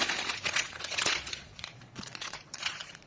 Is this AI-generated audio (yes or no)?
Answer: yes